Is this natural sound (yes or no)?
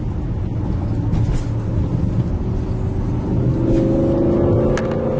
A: yes